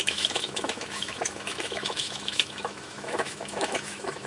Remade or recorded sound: remade